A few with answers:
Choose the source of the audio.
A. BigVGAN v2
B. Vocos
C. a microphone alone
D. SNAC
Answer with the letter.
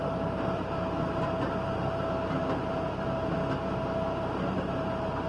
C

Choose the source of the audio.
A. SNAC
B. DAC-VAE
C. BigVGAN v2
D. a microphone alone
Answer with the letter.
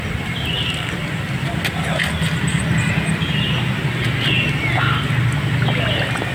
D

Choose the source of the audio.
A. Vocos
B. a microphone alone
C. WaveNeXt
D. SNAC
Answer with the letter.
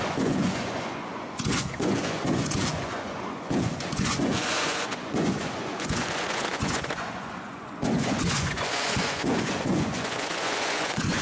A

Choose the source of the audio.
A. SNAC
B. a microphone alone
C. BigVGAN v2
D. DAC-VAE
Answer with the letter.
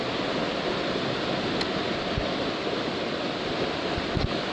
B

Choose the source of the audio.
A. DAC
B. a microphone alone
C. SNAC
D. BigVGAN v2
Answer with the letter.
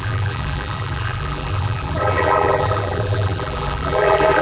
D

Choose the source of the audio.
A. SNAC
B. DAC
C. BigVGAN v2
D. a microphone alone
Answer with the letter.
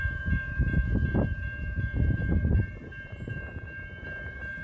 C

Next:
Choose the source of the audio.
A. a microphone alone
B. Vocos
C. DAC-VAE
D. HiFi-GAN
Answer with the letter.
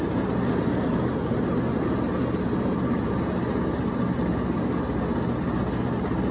A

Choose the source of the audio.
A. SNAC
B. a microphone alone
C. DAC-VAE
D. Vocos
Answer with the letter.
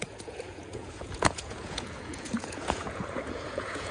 D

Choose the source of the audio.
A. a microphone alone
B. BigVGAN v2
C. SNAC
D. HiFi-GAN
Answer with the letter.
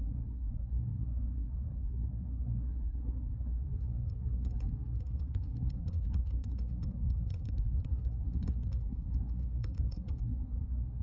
C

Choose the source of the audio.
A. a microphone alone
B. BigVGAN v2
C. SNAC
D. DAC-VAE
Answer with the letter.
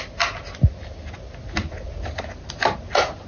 A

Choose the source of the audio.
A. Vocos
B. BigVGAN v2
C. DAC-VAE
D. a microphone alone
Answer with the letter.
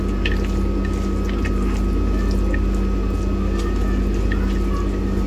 D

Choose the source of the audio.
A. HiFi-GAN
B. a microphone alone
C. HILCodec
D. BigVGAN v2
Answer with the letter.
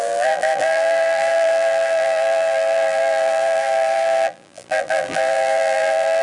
D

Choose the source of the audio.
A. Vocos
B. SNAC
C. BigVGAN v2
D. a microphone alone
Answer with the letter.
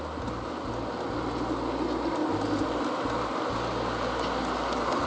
D